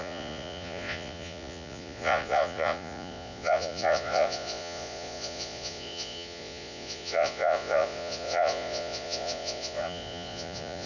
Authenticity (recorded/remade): remade